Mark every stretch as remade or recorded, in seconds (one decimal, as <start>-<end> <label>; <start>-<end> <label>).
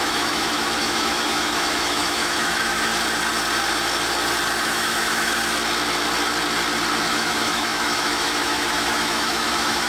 0.0-2.9 remade; 2.9-4.6 recorded; 4.6-5.3 remade; 5.3-7.0 recorded; 7.0-9.9 remade